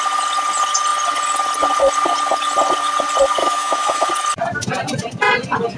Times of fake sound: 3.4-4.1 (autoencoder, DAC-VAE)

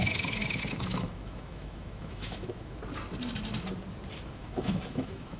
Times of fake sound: 0.0-2.8 (autoencoder, DAC-VAE); 4.3-5.4

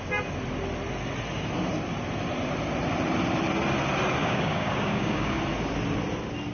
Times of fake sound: 4.2-5.4 (codec, DAC)

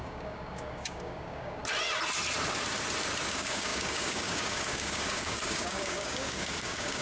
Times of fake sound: 0.0-1.6 (codec, DAC); 3.3-7.0

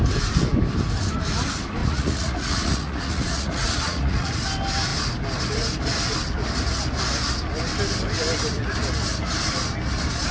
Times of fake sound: 1.8-4.3 (vocoder, Vocos)

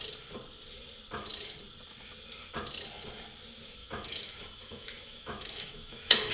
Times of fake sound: 3.8-6.3 (autoencoder, DAC-VAE)